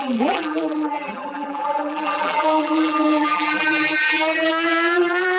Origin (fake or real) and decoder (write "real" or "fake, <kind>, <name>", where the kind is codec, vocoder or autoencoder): fake, vocoder, BigVGAN v2